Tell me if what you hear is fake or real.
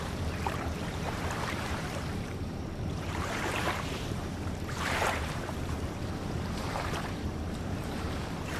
fake